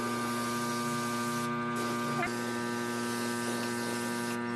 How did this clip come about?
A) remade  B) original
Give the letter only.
B